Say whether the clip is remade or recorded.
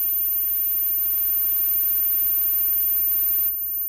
recorded